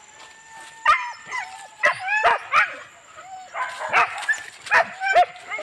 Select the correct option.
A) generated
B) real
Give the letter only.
B